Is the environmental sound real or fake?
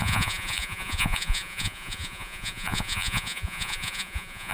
fake